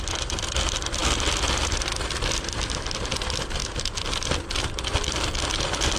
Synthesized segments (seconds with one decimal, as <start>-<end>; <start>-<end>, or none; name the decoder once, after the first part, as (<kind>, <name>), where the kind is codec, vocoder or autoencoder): none